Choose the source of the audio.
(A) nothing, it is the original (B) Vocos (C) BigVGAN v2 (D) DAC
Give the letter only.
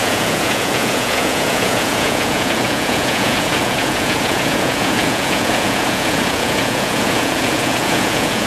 B